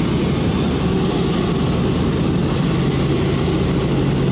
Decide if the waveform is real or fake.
real